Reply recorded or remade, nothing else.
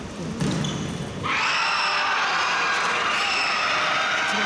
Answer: recorded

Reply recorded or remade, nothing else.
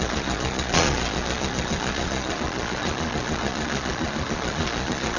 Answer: remade